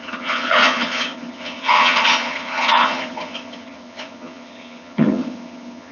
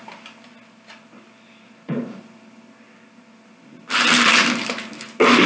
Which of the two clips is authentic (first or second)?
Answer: second